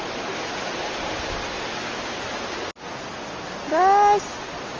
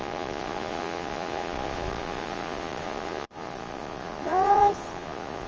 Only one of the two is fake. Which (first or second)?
second